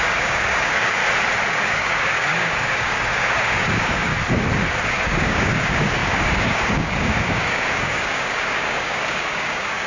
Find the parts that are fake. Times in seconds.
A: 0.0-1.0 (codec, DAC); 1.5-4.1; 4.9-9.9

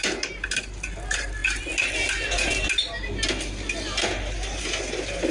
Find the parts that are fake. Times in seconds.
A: none

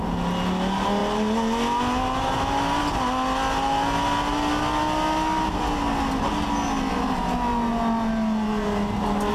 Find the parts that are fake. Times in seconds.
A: none

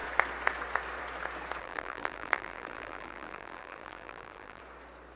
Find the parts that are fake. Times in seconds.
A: 1.6-4.6 (vocoder, BigVGAN v2)